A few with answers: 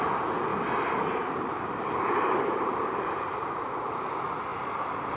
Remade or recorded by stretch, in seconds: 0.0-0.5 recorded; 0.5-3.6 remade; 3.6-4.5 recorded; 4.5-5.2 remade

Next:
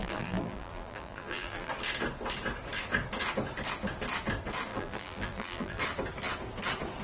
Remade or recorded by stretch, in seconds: 0.0-1.7 remade; 1.7-4.7 recorded; 4.7-5.8 remade; 5.8-7.0 recorded

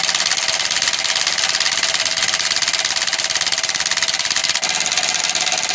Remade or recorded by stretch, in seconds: 0.0-5.7 recorded

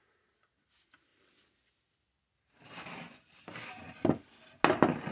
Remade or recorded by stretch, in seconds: 0.0-5.1 recorded

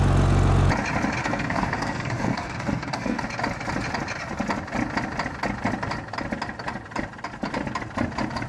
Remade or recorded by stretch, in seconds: 0.0-1.2 recorded; 1.2-3.2 remade; 3.2-8.5 recorded

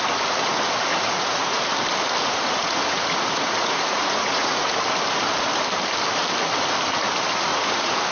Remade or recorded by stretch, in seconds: 0.0-0.9 recorded; 0.9-1.6 remade; 1.6-2.2 recorded; 2.2-4.7 remade; 4.7-7.5 recorded; 7.5-8.1 remade

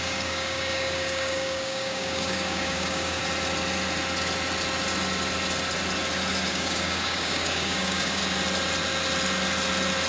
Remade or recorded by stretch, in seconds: 0.0-3.2 remade; 3.2-6.5 recorded; 6.5-8.2 remade; 8.2-10.1 recorded